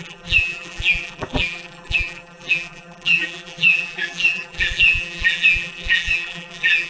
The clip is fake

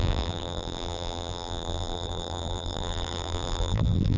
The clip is fake